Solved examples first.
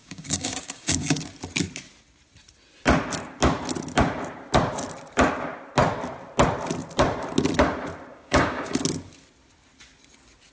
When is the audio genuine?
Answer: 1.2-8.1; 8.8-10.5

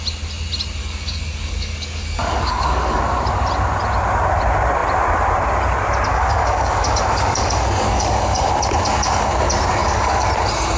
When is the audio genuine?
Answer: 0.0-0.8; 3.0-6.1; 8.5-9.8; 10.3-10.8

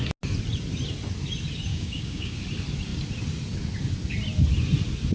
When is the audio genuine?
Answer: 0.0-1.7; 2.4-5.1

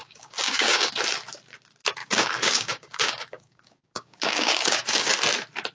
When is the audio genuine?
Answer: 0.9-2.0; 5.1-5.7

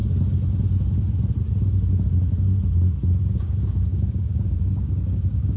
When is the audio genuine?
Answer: 0.0-3.4

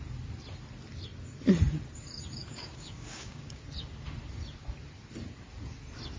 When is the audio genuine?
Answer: 0.0-2.4; 3.6-6.2

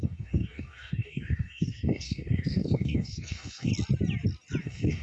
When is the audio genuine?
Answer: 3.7-4.6

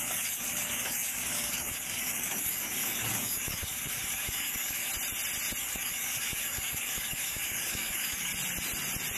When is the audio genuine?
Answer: 4.9-5.6; 8.3-9.2